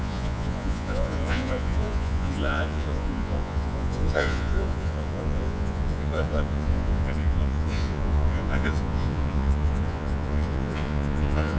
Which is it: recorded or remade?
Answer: remade